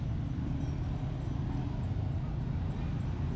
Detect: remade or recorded recorded